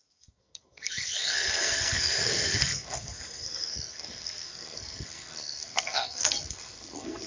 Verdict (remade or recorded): remade